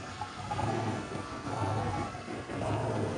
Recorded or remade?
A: remade